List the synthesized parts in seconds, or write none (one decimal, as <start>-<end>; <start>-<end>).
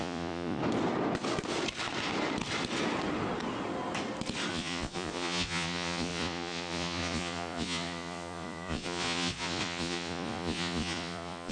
0.0-0.6; 4.5-11.5